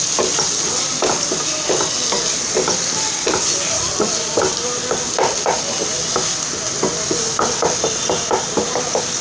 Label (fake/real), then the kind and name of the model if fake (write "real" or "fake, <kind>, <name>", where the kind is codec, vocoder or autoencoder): real